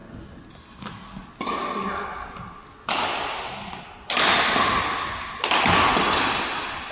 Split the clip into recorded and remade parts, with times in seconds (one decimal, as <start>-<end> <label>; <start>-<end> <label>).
0.0-6.9 recorded